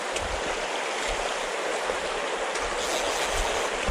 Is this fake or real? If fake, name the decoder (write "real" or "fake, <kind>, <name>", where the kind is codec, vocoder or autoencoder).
real